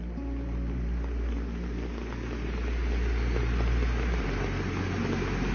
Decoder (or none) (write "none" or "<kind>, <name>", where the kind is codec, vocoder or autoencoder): none